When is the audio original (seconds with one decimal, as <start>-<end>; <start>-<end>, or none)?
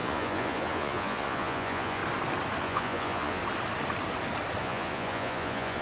2.0-2.6; 3.4-4.6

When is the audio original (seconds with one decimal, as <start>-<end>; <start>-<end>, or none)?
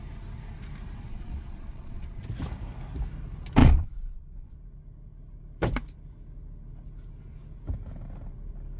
0.0-1.1; 2.2-3.6; 4.5-8.8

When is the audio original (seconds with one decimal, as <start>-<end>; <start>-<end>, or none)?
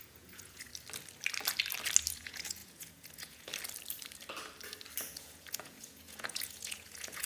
0.7-2.1; 3.5-5.1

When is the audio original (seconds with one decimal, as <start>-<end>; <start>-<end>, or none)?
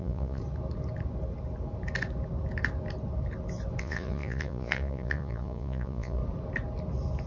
0.4-3.8; 6.2-7.3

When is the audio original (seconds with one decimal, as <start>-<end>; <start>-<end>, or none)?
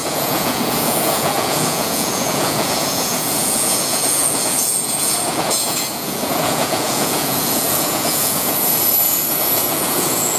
none